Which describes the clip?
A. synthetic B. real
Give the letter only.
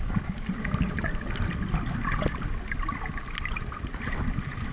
B